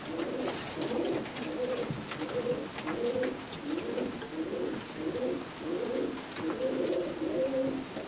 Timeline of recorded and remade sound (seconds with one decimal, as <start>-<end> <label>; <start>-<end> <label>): 0.0-8.1 recorded